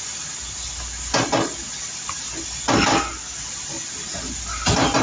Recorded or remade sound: recorded